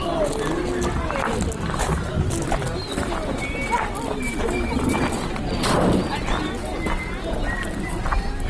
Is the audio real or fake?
real